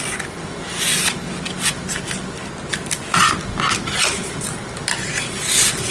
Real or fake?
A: real